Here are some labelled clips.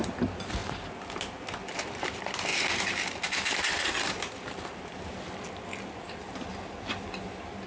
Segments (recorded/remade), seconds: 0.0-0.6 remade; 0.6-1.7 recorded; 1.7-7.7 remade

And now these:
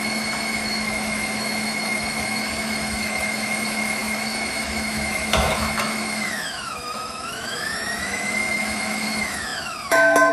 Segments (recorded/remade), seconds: 0.0-10.3 remade

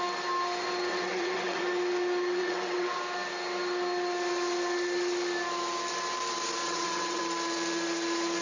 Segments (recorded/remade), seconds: 0.0-0.9 recorded; 0.9-1.6 remade; 1.6-2.4 recorded; 2.4-3.0 remade; 3.0-6.6 recorded; 6.6-7.2 remade; 7.2-8.4 recorded

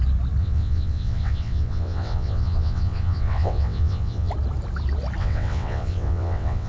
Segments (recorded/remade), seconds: 0.0-0.4 recorded; 0.4-4.3 remade; 4.3-5.2 recorded; 5.2-6.7 remade

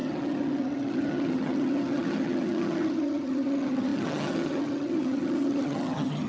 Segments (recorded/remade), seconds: 0.0-6.3 remade

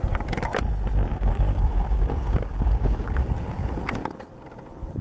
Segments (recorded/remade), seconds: 0.0-1.1 recorded; 1.1-3.2 remade; 3.2-5.0 recorded